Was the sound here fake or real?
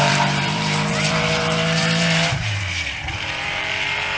fake